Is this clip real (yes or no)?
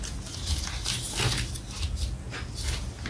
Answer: yes